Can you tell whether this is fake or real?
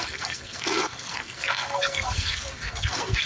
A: fake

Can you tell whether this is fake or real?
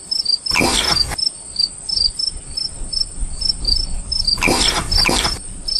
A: real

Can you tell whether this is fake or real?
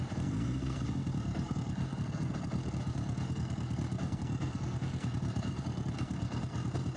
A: fake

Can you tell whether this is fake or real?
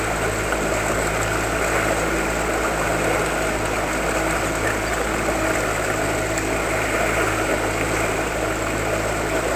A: real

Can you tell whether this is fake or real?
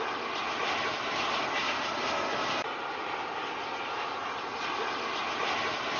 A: real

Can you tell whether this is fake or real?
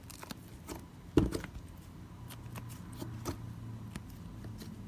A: real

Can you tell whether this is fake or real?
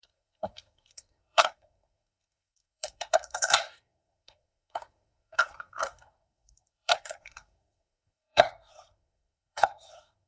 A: fake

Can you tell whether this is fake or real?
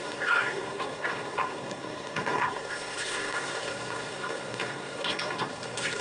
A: fake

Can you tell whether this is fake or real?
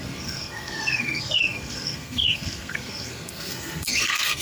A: fake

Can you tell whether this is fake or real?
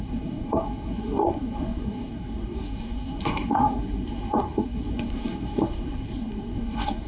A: fake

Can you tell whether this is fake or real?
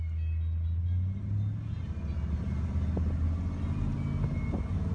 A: real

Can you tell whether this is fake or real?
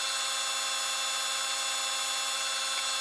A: real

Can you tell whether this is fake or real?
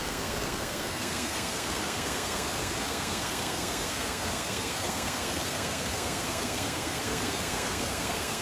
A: fake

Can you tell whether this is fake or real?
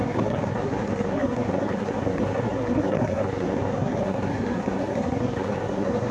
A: fake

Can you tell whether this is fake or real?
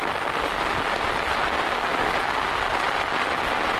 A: real